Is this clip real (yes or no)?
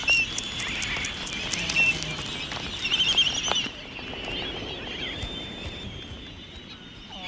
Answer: yes